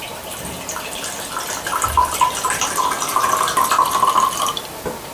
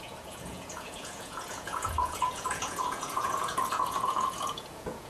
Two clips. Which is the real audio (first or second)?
first